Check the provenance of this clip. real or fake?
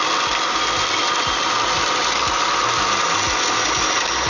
real